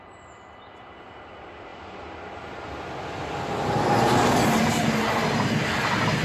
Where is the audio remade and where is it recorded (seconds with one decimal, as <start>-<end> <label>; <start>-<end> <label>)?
0.0-6.2 recorded